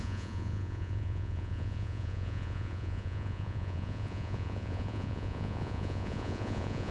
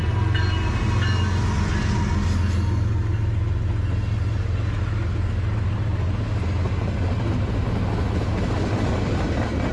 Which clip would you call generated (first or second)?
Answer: first